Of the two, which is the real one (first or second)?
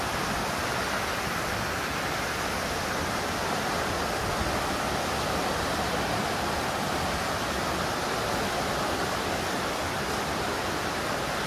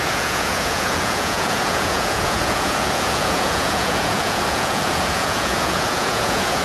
first